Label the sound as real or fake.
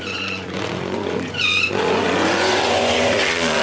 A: fake